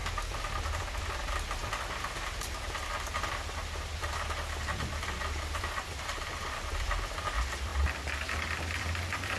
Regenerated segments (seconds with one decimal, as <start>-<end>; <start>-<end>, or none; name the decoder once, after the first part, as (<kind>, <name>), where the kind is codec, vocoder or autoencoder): 0.0-7.7 (vocoder, BigVGAN v2); 8.8-9.4